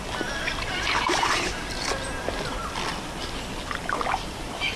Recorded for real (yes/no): yes